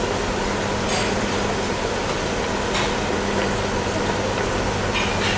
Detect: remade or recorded recorded